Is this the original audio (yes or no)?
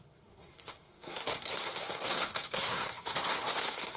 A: no